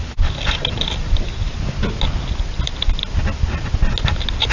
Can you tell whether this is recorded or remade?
recorded